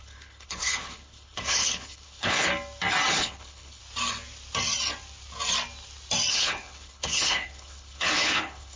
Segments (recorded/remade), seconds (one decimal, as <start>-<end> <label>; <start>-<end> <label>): 0.0-2.5 remade; 2.5-3.1 recorded; 3.1-3.8 remade; 3.8-6.3 recorded; 6.3-8.8 remade